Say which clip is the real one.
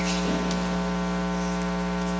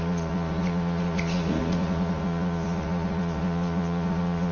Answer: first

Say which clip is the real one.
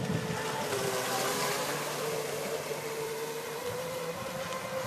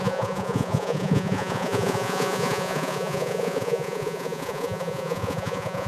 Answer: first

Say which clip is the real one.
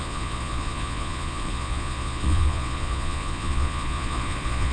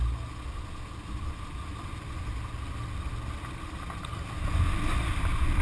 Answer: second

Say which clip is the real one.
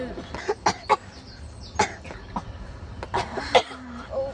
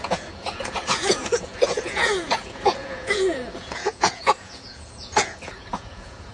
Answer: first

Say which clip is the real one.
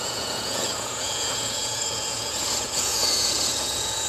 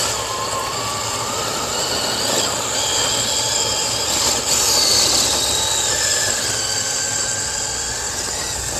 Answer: second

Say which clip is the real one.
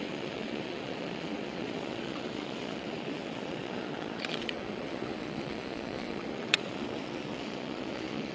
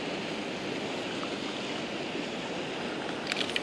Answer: second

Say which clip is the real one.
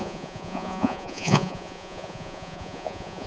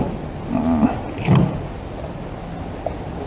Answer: second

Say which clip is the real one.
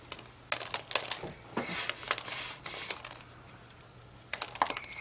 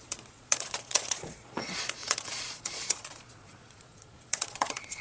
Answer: first